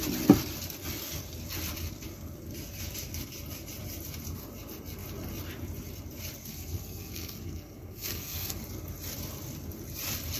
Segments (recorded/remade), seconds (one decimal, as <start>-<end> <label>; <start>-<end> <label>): 0.0-6.4 recorded; 6.4-8.6 remade; 8.6-10.4 recorded